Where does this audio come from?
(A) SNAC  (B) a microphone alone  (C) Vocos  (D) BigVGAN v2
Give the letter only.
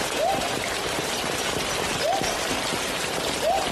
B